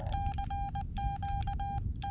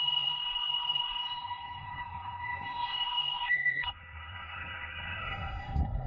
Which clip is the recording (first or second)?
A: first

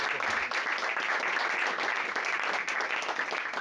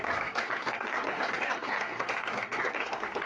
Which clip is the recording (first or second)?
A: first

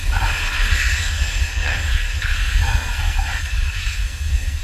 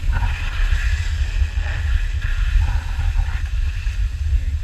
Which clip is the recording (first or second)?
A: second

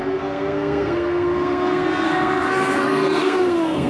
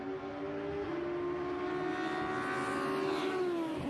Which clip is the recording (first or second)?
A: second